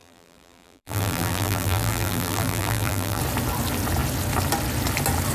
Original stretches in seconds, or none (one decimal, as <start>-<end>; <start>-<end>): 3.2-5.3